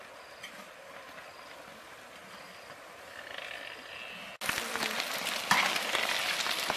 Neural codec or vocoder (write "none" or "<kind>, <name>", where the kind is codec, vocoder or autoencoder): none